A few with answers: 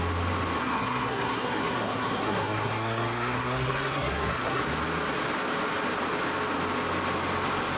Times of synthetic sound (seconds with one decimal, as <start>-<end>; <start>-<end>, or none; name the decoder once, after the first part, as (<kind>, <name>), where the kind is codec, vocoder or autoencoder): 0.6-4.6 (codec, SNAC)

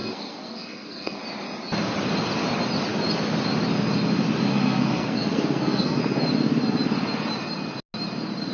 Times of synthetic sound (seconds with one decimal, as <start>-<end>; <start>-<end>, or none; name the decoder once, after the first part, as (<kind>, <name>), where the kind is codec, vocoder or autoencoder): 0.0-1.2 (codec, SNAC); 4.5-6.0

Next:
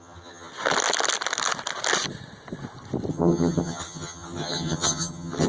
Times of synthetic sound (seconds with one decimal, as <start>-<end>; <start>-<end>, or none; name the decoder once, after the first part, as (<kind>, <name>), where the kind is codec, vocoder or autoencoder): 0.0-0.5 (vocoder, HiFi-GAN); 3.1-5.5